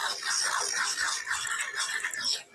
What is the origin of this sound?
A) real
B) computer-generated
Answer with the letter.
A